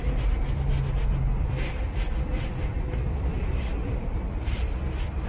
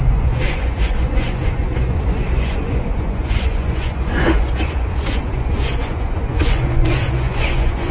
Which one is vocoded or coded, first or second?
second